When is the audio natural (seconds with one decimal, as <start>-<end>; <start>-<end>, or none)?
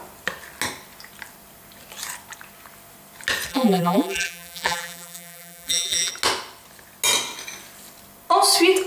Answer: 0.0-3.5; 6.1-8.9